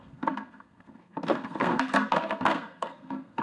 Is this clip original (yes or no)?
no